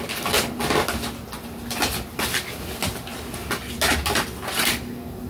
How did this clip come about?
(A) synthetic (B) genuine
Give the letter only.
B